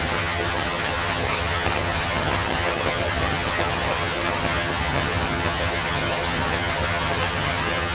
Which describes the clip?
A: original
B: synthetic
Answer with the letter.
B